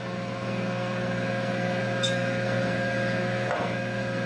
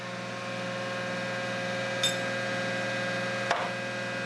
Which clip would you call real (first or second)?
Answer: second